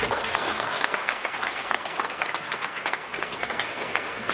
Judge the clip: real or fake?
fake